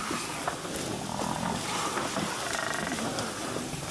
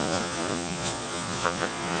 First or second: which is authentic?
first